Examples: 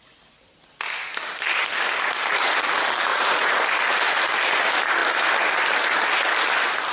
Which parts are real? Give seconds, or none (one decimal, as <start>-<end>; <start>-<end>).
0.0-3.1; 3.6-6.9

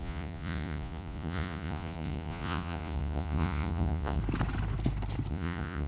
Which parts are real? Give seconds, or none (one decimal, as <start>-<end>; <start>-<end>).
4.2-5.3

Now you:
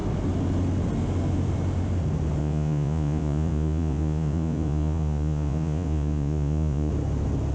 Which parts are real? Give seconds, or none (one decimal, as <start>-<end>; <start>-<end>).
0.0-2.4; 6.9-7.5

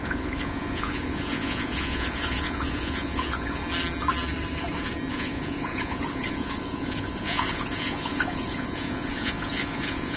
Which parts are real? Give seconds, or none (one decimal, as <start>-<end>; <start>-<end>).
3.6-5.1

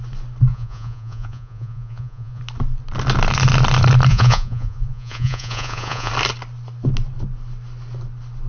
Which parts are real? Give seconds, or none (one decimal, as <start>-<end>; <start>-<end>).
0.0-0.5; 2.4-4.1; 6.1-8.5

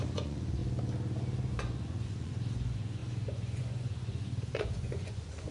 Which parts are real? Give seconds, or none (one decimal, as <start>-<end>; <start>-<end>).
0.6-1.5